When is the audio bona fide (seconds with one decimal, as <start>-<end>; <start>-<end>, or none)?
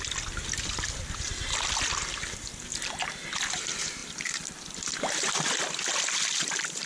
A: 1.3-3.2